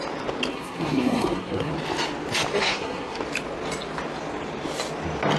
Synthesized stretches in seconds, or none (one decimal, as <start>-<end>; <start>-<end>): 0.5-1.7; 2.6-3.2